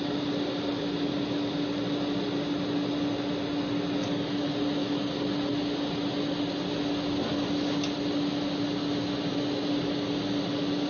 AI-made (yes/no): no